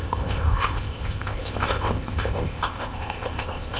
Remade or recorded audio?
remade